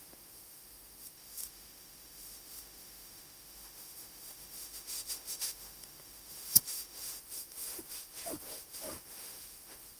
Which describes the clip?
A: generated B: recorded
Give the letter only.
A